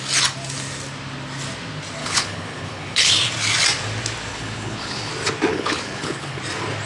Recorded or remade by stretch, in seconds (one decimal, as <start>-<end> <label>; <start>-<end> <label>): 0.0-2.0 recorded; 2.0-3.1 remade; 3.1-4.3 recorded; 4.3-5.1 remade; 5.1-5.5 recorded; 5.5-6.4 remade; 6.4-6.9 recorded